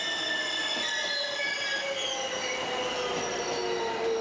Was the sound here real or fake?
real